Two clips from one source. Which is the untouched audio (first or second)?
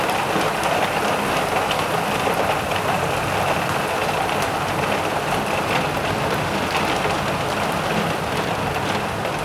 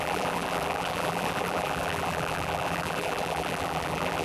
first